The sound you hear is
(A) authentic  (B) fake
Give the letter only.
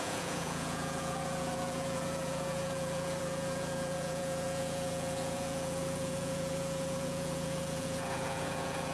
B